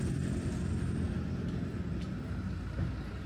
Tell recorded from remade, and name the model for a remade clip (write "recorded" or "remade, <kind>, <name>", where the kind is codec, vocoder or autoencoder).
recorded